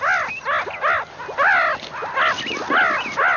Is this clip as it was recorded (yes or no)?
yes